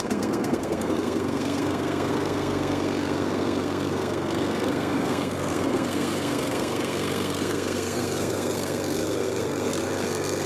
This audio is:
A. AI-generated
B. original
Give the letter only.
A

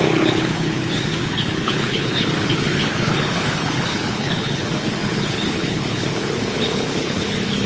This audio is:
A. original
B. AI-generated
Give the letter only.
B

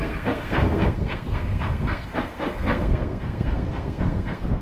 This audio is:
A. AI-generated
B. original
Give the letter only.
A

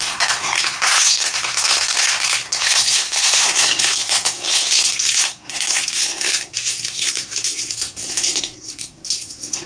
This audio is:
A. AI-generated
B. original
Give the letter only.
A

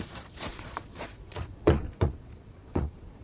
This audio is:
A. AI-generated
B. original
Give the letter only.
A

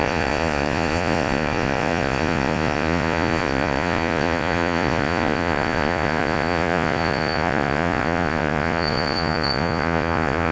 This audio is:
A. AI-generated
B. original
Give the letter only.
A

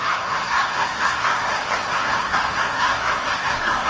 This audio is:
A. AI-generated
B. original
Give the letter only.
A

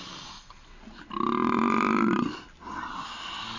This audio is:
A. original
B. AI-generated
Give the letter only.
A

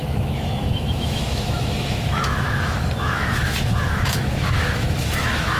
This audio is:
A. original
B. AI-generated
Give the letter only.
B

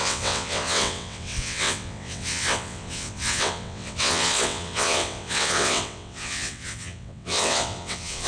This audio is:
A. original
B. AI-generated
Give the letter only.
B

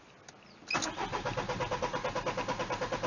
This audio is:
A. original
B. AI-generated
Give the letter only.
A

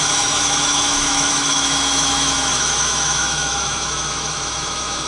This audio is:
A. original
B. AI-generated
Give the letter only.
B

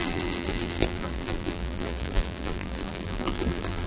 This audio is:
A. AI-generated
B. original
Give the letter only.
A